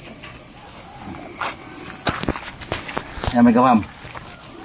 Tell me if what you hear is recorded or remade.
recorded